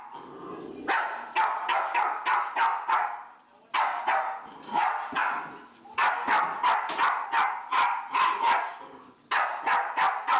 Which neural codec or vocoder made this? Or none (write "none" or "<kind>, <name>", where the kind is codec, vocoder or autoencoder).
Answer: none